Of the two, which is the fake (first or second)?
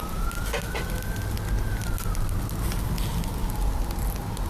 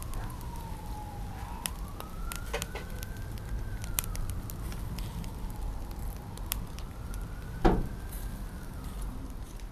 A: second